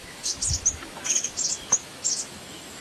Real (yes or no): no